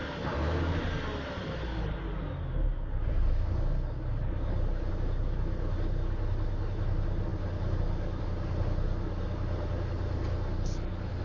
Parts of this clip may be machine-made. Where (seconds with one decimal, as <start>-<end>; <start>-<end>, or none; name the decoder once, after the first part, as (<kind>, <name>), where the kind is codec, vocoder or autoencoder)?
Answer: none

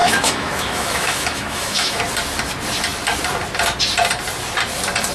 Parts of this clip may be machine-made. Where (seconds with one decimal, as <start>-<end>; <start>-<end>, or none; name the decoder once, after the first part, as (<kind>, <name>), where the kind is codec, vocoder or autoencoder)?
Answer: 0.0-2.0 (autoencoder, DAC-VAE)

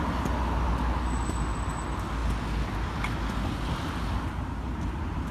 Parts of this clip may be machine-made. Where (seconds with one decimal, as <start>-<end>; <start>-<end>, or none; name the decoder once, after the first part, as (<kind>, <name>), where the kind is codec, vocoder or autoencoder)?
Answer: none